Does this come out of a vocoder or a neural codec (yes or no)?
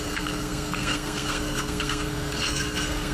yes